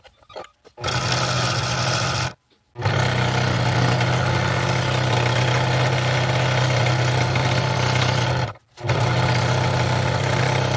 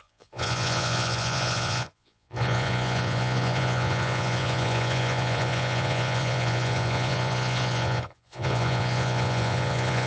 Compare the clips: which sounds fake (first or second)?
second